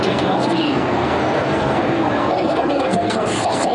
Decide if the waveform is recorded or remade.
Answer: remade